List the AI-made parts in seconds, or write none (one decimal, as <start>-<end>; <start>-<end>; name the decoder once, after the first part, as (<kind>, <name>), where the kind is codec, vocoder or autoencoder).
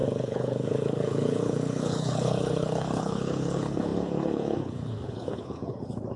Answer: 0.0-6.2 (codec, HILCodec)